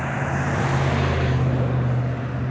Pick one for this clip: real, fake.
real